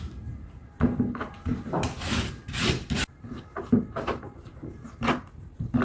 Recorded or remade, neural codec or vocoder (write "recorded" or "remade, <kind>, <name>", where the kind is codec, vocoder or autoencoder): recorded